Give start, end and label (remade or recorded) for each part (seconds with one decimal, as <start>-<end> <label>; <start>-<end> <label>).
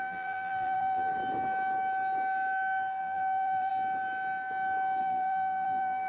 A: 0.0-1.1 remade; 1.1-3.0 recorded; 3.0-3.7 remade; 3.7-5.0 recorded; 5.0-6.1 remade